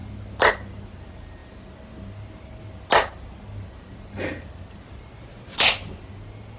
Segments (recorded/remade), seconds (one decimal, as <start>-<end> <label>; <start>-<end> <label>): 0.0-6.6 recorded